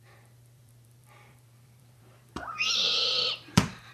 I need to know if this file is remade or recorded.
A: remade